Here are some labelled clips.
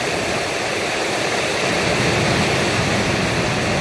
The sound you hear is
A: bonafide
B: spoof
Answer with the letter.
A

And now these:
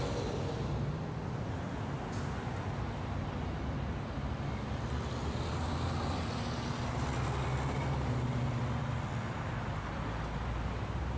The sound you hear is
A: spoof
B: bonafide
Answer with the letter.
B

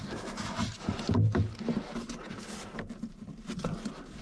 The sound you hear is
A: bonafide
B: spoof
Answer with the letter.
A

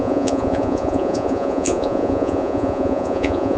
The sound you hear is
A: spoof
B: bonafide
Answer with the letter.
A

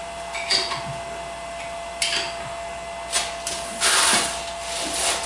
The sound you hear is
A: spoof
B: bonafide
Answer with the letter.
B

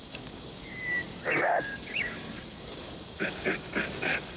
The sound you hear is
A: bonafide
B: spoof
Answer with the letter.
B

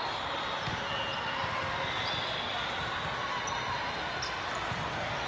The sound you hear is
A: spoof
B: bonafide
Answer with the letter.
B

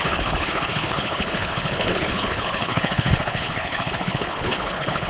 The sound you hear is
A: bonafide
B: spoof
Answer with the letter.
B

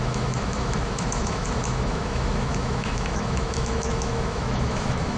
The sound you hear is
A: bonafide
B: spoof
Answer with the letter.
B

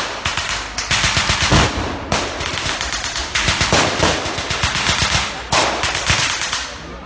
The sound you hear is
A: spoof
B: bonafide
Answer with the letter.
B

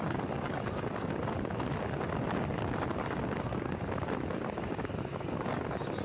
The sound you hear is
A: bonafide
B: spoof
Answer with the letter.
A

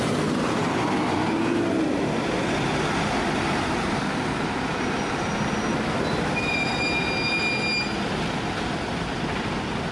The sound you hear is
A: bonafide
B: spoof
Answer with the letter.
A